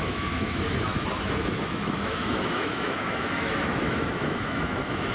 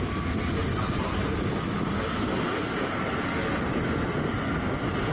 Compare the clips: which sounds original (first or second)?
second